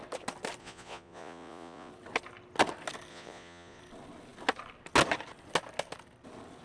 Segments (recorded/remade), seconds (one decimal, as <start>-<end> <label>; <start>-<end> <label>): 0.0-0.6 recorded; 0.6-1.9 remade; 1.9-3.1 recorded; 3.1-3.8 remade; 3.8-6.6 recorded